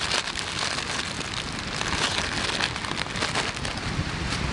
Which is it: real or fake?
real